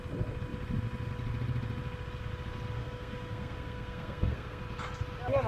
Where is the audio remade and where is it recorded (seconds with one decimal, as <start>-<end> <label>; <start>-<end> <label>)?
0.0-2.8 recorded; 2.8-4.6 remade; 4.6-5.5 recorded